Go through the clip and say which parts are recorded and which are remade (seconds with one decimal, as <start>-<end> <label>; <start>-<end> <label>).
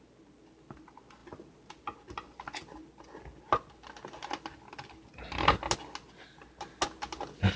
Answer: 0.0-7.6 recorded